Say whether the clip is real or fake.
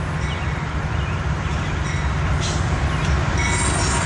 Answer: real